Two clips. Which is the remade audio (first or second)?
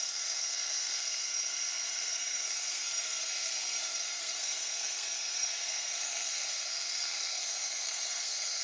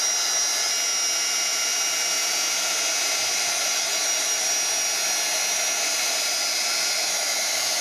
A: first